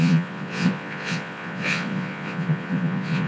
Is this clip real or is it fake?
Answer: fake